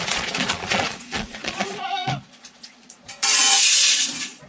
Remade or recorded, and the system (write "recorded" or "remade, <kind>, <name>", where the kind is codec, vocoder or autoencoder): remade, vocoder, Vocos